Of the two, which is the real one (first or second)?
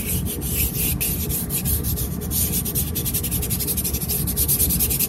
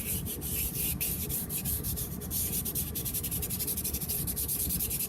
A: first